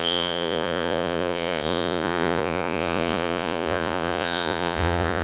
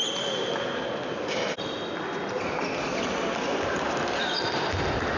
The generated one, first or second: first